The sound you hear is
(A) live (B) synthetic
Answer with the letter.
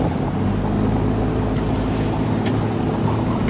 A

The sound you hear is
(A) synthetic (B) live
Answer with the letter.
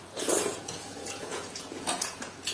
A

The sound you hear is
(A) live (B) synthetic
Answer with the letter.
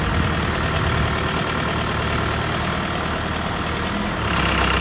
A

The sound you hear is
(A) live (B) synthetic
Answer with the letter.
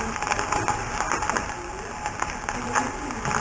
A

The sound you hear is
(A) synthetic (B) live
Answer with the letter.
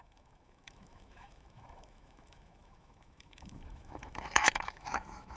A